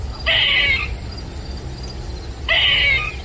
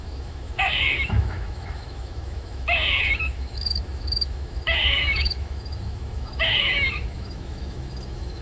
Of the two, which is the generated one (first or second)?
second